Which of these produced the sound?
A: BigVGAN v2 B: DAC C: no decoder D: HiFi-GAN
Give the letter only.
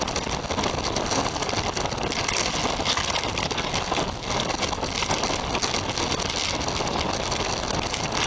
C